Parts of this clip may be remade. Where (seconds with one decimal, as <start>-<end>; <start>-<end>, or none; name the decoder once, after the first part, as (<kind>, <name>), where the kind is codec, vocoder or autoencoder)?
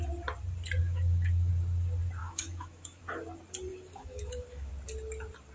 0.8-1.5 (autoencoder, DAC-VAE); 2.2-3.0; 3.7-4.7